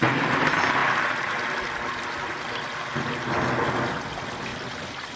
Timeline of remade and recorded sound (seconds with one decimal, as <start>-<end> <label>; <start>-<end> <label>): 0.0-5.2 recorded